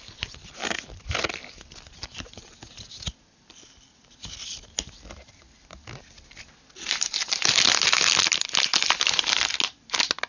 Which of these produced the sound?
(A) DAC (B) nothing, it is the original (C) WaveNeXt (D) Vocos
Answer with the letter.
B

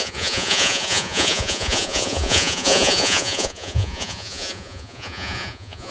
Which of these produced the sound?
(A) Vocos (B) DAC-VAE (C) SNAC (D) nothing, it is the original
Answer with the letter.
A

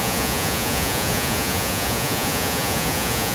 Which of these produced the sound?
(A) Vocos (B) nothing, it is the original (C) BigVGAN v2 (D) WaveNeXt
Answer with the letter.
A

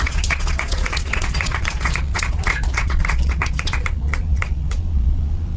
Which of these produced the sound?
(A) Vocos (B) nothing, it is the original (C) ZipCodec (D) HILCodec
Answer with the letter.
A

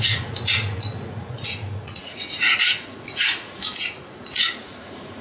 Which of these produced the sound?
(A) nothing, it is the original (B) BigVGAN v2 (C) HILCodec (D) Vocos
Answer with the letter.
D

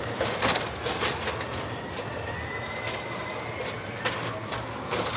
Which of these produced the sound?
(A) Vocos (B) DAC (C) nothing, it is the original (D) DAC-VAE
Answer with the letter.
C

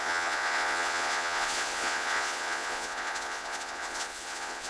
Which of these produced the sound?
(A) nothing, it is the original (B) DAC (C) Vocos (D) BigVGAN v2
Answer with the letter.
C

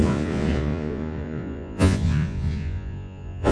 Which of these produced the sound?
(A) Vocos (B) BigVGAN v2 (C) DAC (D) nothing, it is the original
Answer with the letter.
A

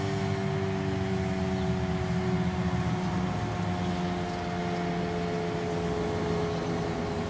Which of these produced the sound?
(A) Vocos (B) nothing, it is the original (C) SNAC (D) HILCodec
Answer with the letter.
B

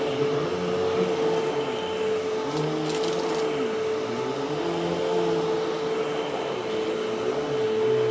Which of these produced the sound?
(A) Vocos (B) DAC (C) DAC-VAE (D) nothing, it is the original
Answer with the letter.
D